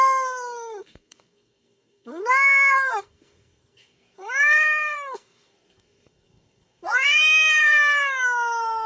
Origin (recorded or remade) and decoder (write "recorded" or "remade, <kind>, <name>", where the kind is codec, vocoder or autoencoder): remade, codec, SNAC